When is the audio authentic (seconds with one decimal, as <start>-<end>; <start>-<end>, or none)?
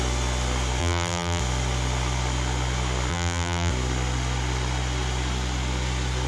0.0-0.8; 1.4-3.1; 3.7-6.3